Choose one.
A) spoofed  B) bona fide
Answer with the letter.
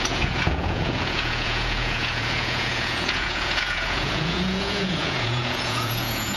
A